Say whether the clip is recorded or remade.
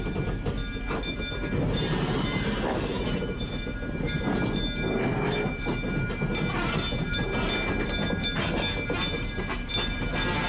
recorded